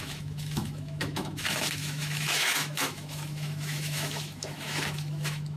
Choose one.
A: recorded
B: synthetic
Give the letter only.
B